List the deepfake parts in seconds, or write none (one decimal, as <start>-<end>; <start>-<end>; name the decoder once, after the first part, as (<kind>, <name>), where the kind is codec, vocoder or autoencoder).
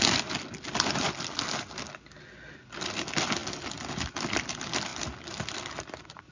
none